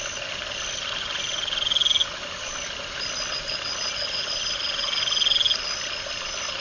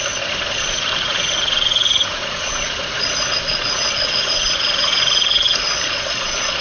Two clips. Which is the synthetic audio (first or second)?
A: second